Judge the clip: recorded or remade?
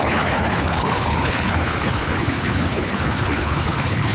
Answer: remade